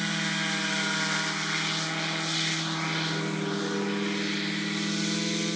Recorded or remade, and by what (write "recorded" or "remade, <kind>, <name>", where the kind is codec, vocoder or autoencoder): recorded